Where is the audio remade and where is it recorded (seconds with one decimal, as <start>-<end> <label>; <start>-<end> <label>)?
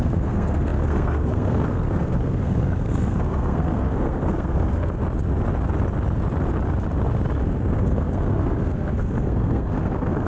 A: 0.0-5.0 remade; 5.0-7.4 recorded; 7.4-10.3 remade